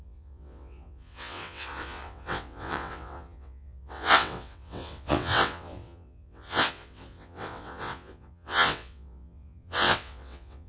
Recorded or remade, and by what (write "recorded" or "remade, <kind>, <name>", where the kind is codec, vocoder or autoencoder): remade, vocoder, WaveNeXt